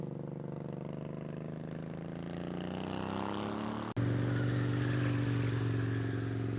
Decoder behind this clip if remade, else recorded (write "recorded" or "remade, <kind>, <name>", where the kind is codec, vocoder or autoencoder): recorded